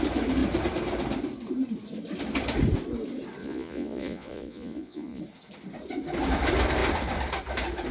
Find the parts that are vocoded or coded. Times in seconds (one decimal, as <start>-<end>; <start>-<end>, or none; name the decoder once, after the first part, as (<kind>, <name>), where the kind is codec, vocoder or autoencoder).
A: 3.4-5.2 (vocoder, Vocos)

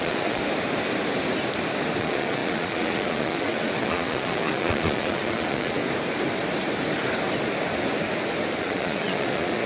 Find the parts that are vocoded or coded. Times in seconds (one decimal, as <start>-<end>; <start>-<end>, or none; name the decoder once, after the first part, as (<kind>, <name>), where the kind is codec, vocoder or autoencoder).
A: 0.0-0.4 (vocoder, Vocos); 2.0-5.8; 8.6-9.7